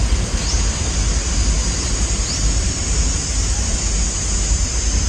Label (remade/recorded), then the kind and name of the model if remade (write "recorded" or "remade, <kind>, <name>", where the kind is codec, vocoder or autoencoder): recorded